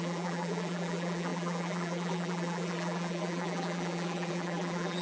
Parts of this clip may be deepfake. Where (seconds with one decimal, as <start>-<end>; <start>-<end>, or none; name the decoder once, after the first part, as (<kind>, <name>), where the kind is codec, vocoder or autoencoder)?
0.0-5.0 (vocoder, BigVGAN v2)